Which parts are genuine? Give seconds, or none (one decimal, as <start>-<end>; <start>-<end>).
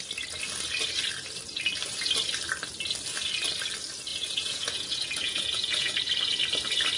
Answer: 0.0-4.1; 5.9-7.0